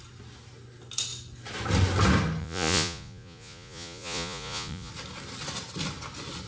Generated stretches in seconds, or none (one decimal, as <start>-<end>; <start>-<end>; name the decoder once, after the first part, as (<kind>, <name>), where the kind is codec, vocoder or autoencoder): 2.4-4.9 (vocoder, Vocos)